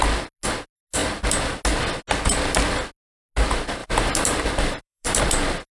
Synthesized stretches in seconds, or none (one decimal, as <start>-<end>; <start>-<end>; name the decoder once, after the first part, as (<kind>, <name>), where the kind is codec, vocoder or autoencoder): 3.8-5.2 (vocoder, BigVGAN v2)